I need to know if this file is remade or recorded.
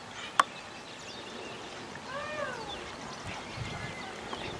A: recorded